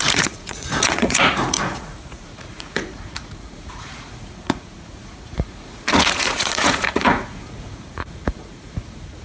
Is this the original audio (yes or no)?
no